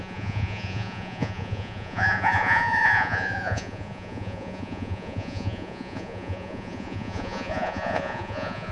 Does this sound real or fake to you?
fake